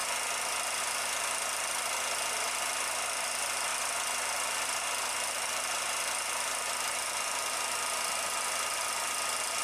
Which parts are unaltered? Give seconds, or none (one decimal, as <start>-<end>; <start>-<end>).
0.0-9.6